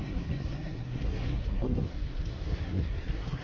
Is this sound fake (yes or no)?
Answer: yes